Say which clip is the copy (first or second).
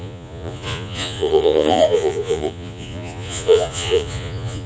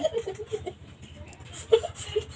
first